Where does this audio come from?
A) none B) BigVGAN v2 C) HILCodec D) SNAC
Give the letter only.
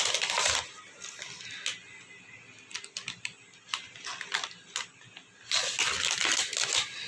A